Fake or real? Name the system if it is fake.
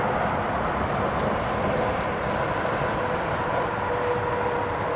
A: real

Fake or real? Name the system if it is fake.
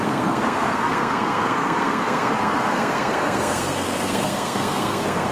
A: fake, codec, SNAC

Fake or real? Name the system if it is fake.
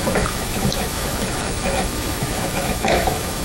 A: fake, autoencoder, DAC-VAE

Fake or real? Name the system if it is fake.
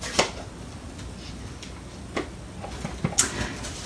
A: real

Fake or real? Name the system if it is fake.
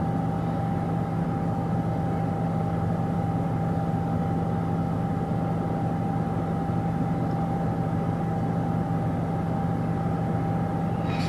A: real